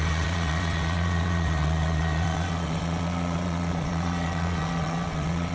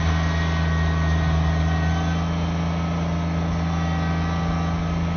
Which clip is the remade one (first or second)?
first